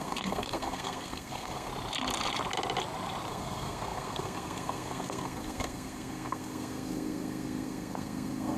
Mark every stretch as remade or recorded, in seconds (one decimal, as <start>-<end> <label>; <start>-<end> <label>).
0.0-1.7 remade; 1.7-3.3 recorded; 3.3-8.6 remade